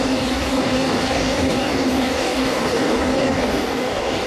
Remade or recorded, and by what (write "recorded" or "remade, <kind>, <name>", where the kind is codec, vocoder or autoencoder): remade, codec, DAC